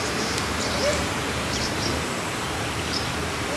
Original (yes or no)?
no